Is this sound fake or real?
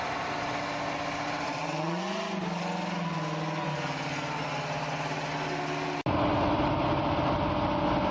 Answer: real